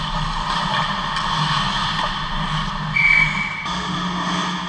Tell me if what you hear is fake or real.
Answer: real